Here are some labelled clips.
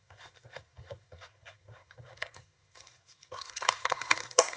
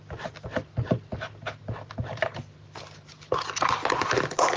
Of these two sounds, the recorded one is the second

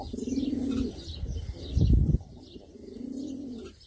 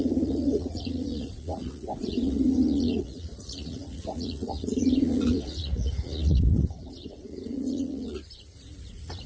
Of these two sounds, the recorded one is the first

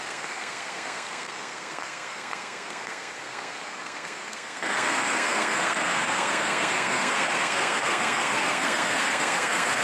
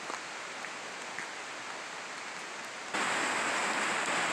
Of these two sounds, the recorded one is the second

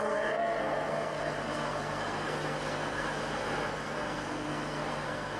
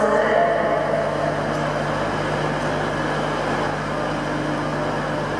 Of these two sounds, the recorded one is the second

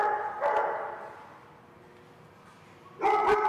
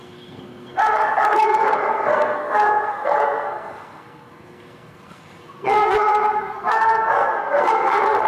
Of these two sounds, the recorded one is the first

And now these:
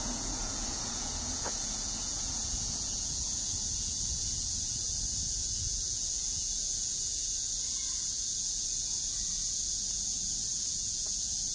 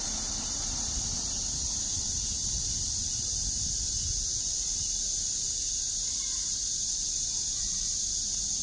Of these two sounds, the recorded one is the second